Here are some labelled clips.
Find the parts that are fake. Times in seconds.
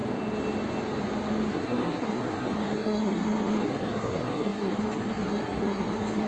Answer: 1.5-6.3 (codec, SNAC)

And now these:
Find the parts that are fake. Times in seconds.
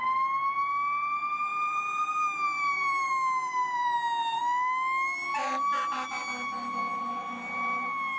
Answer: 1.5-4.4 (vocoder, BigVGAN v2)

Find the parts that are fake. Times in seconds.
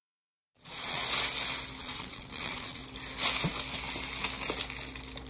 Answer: 0.0-1.0 (vocoder, Vocos); 1.8-2.8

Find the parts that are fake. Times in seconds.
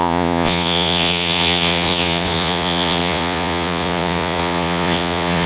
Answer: 0.0-5.5 (vocoder, Vocos)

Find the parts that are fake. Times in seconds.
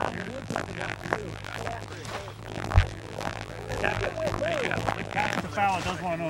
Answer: 0.0-1.9 (vocoder, BigVGAN v2); 2.4-5.4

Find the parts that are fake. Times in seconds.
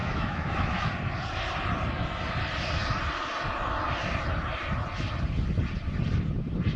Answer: 0.0-0.9 (autoencoder, DAC-VAE)